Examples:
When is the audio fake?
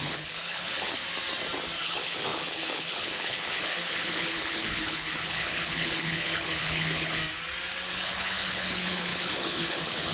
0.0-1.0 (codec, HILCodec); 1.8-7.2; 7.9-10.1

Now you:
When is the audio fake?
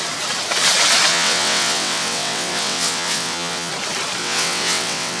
1.1-3.7 (vocoder, WaveNeXt); 4.2-5.2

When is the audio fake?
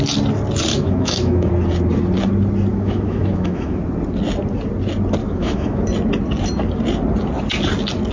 0.7-1.5 (autoencoder, DAC-VAE); 2.7-3.8; 5.2-5.8